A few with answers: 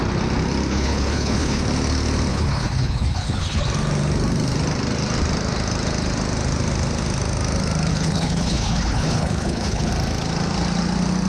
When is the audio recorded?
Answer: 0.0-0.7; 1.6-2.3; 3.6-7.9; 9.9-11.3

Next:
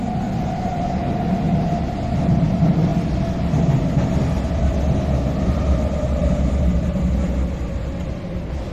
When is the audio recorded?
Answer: 0.0-8.7